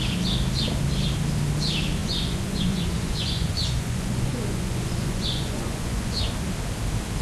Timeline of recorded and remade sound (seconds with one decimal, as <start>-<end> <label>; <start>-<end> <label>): 0.0-2.0 recorded; 2.0-6.3 remade; 6.3-7.2 recorded